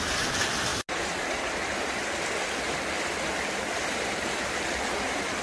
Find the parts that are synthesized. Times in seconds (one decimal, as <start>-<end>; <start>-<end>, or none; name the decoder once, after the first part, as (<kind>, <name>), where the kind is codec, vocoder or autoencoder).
none